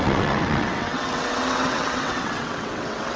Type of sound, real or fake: fake